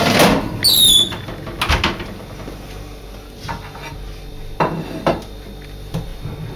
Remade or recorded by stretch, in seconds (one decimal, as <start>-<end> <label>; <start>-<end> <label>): 0.0-6.6 recorded